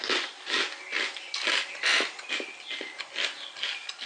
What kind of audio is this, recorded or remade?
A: recorded